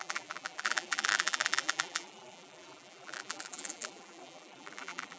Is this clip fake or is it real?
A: fake